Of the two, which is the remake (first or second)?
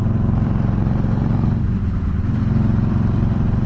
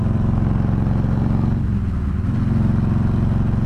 first